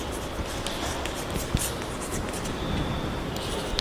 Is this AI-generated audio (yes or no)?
no